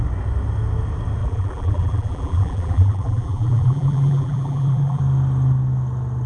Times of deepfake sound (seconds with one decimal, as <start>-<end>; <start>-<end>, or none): 1.2-5.0